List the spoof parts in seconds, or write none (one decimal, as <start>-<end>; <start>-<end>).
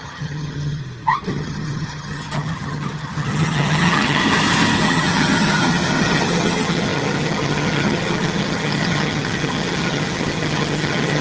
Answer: 0.0-0.8; 1.3-4.2; 4.8-11.2